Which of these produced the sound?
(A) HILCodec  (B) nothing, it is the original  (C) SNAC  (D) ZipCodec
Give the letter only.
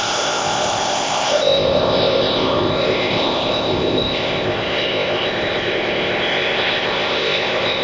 D